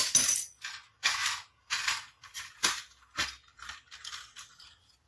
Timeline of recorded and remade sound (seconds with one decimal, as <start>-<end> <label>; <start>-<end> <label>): 0.0-1.2 recorded; 1.2-2.5 remade; 2.5-5.1 recorded